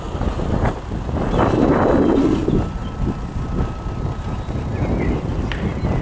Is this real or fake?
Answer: real